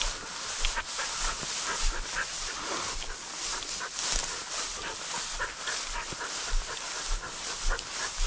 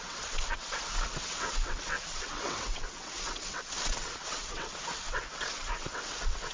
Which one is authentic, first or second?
first